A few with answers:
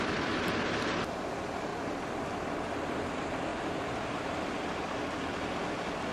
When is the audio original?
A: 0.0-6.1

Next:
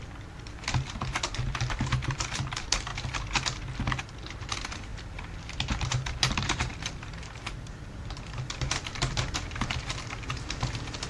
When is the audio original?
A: 2.9-4.1

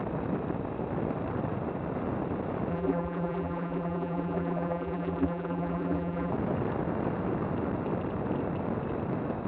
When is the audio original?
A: 0.0-2.7; 6.3-9.5

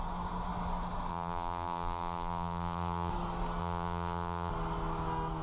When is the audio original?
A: 0.0-1.1; 3.1-3.6; 4.5-5.4

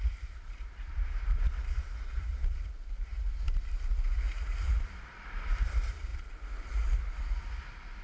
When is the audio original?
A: 3.1-4.6

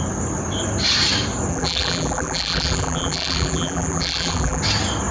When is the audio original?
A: 0.0-1.5; 4.6-5.1

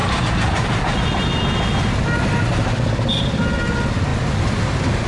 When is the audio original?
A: 0.0-5.1

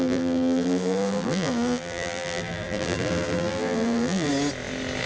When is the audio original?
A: 4.3-5.1